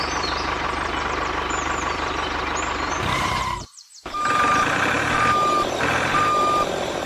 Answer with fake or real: fake